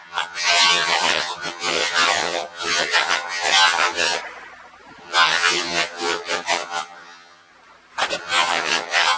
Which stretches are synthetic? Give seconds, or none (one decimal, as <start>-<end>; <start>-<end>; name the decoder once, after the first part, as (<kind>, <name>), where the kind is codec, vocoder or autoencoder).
0.0-4.2 (vocoder, HiFi-GAN); 5.0-7.5; 8.2-9.2

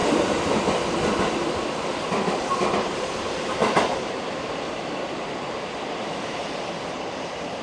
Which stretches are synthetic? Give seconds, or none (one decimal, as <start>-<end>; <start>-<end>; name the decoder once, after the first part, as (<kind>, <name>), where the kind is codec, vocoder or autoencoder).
2.7-7.6 (vocoder, BigVGAN v2)

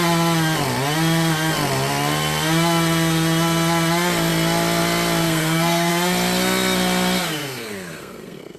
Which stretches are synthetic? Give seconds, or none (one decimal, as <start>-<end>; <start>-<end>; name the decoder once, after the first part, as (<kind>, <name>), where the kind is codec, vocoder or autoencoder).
5.2-5.9 (codec, SNAC); 7.4-8.6